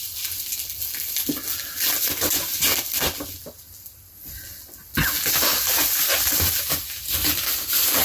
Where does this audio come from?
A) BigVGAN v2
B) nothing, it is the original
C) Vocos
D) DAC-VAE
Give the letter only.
B